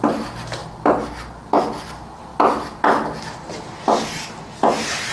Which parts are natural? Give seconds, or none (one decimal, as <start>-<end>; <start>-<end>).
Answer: 0.0-5.1